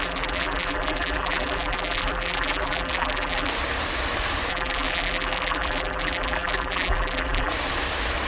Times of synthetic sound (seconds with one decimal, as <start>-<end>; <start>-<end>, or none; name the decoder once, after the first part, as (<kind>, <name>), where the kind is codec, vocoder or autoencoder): 0.0-3.5 (vocoder, BigVGAN v2); 4.5-7.5